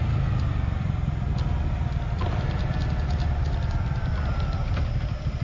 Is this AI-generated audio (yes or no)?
no